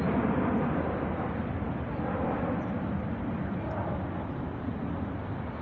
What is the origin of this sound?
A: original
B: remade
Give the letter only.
A